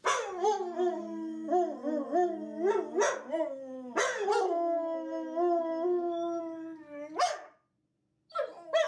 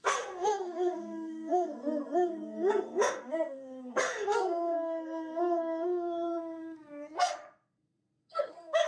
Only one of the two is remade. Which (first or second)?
second